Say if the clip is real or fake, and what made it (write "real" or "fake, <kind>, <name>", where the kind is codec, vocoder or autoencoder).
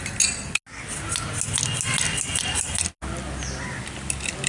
real